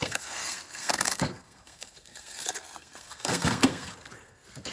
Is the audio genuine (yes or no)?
no